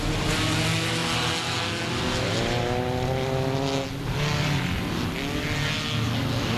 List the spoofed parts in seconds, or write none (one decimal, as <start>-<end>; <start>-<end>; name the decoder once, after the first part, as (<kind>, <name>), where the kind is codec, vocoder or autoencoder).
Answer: none